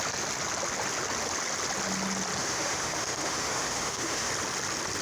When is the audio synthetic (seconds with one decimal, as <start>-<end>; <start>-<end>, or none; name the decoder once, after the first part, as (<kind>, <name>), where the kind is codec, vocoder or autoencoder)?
2.4-4.3 (autoencoder, DAC-VAE)

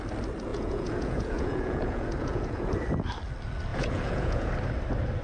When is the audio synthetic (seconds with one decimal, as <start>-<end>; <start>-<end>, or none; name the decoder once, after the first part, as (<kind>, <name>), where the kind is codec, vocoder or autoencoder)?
0.5-2.7 (vocoder, Vocos); 3.7-4.5

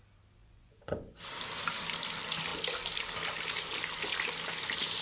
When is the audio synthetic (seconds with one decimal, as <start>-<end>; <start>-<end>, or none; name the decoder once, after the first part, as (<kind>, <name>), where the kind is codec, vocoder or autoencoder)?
0.4-1.2 (vocoder, Vocos)

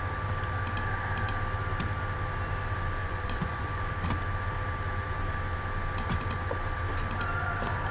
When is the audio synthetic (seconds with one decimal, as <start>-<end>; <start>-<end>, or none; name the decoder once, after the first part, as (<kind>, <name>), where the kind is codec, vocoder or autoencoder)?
3.0-3.9 (vocoder, Vocos)

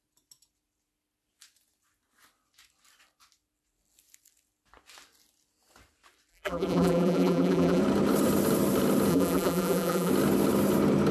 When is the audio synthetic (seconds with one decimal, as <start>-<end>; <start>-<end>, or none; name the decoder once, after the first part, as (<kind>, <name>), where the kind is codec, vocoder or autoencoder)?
6.3-7.8 (vocoder, BigVGAN v2); 9.1-10.1

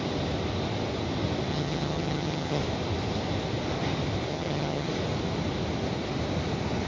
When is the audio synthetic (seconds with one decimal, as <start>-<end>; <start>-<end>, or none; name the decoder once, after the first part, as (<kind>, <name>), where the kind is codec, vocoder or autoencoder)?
1.5-2.6 (vocoder, HiFi-GAN); 4.3-4.9

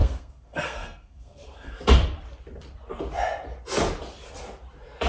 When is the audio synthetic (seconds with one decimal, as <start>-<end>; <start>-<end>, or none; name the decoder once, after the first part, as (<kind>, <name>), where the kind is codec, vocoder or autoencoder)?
0.0-1.9 (codec, SNAC)